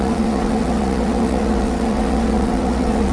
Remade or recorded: remade